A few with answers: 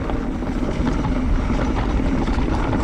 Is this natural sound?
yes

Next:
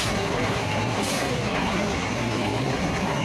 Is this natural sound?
no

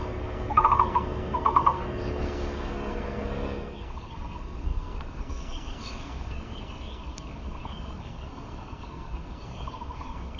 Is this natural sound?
no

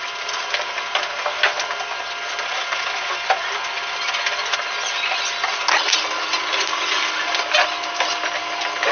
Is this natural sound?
yes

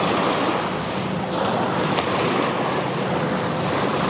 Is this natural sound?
yes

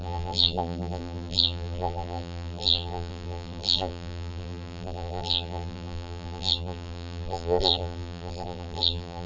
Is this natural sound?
no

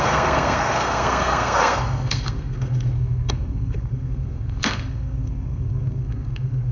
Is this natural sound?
no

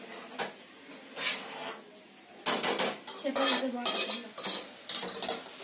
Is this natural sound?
yes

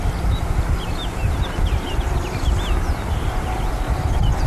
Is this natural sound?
yes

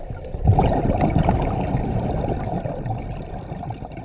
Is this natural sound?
yes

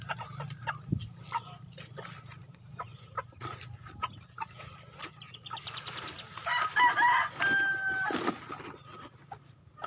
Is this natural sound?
yes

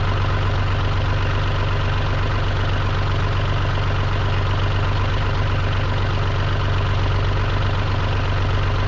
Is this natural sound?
yes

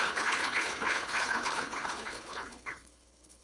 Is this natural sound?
no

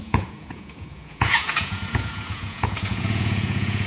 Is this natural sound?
no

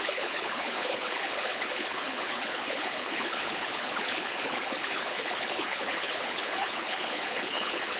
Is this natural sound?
no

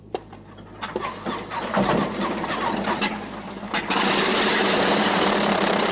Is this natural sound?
no